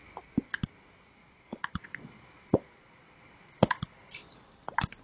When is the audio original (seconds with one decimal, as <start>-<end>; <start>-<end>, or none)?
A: 0.0-1.2; 4.2-5.0